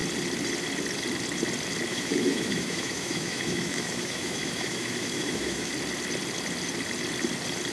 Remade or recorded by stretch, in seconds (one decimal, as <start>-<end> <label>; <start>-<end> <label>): 0.0-1.9 recorded; 1.9-5.7 remade; 5.7-7.7 recorded

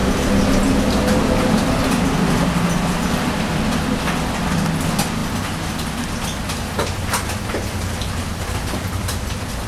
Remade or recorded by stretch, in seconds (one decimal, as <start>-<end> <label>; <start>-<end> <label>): 0.0-9.7 recorded